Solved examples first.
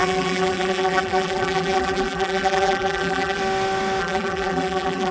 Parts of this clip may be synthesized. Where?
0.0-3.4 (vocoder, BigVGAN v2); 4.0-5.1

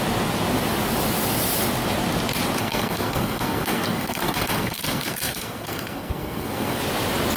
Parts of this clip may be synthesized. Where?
2.6-6.8 (codec, SNAC)

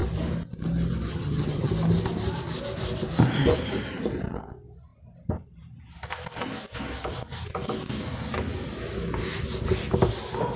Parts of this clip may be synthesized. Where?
1.1-1.7 (vocoder, HiFi-GAN)

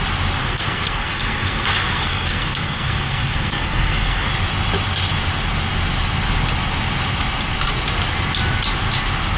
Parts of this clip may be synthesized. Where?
0.4-4.3 (codec, SNAC)